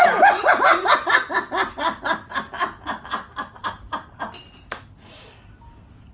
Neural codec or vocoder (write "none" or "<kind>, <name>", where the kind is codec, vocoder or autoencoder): none